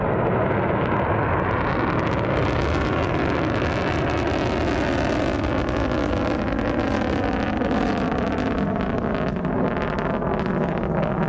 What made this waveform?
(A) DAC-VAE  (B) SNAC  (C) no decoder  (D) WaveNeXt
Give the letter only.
C